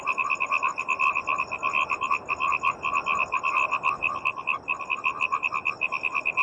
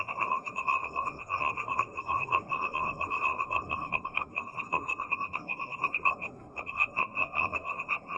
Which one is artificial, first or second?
second